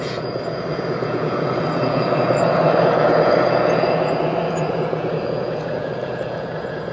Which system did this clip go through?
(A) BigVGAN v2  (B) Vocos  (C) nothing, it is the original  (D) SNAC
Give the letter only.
B